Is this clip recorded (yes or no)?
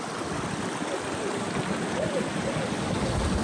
yes